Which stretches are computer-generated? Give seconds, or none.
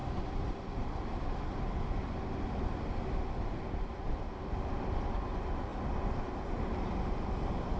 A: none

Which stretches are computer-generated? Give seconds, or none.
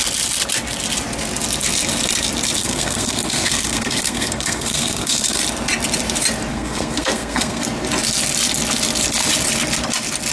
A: 2.6-5.4 (codec, SNAC); 6.5-7.6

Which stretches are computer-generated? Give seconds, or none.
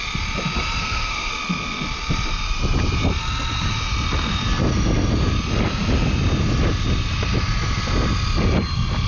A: 0.8-1.3 (codec, SNAC)